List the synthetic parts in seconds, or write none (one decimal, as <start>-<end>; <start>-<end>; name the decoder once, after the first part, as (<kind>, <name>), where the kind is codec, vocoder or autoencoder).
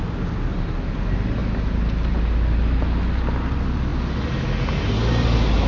none